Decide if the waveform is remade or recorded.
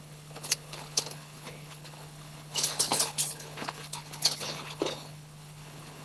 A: remade